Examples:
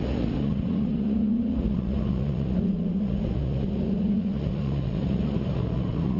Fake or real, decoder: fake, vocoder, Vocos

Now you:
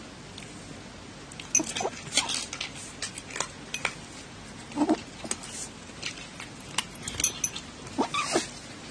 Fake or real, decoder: real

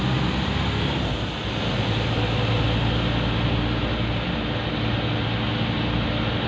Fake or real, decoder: real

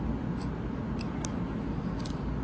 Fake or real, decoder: real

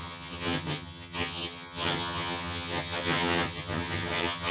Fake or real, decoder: fake, vocoder, HiFi-GAN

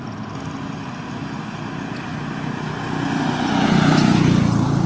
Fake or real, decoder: real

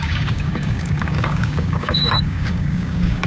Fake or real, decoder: fake, codec, DAC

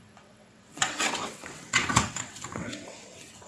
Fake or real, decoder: fake, vocoder, WaveNeXt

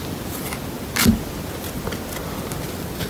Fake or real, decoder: real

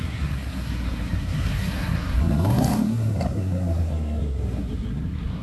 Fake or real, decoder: fake, codec, SNAC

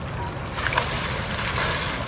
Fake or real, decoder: real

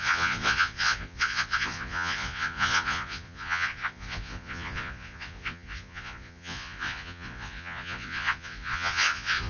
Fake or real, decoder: fake, vocoder, Vocos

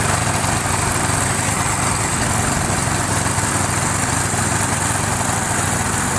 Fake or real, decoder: real